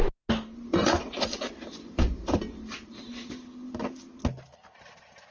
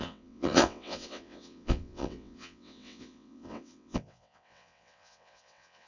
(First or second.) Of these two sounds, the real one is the first